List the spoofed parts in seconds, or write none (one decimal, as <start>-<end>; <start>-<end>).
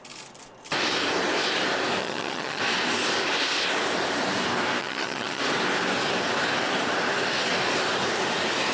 2.0-2.6; 4.8-5.4